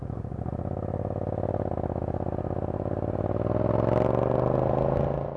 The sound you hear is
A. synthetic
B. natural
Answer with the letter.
B